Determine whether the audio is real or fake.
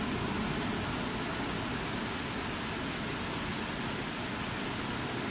real